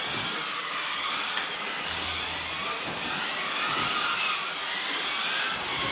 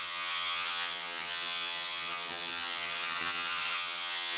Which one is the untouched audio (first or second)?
first